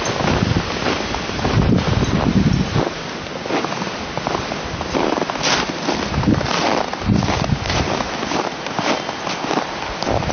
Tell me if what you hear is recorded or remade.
recorded